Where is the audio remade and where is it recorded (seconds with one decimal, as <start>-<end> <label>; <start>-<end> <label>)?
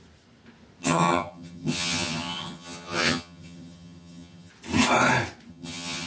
0.0-0.8 recorded; 0.8-4.5 remade; 4.5-5.5 recorded; 5.5-6.1 remade